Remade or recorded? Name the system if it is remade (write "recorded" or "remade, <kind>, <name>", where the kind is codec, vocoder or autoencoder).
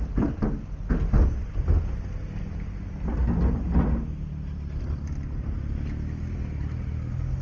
recorded